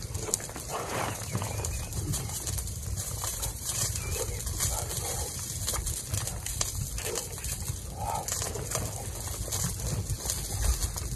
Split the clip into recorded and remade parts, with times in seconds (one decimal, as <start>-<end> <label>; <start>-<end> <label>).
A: 0.0-0.7 recorded; 0.7-4.0 remade; 4.0-11.2 recorded